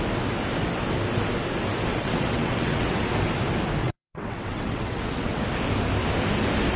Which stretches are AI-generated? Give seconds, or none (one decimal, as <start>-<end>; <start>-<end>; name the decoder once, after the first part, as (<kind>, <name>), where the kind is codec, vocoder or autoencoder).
1.9-3.0 (vocoder, WaveNeXt); 3.8-5.4